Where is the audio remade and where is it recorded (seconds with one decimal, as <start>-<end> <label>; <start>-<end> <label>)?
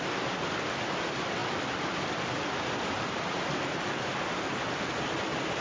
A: 0.0-5.6 recorded